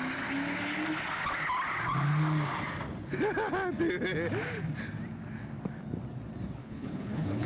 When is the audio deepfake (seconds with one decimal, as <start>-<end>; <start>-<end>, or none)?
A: 6.6-7.5